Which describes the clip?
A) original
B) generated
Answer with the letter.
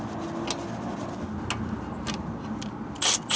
A